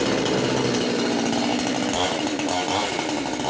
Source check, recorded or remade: recorded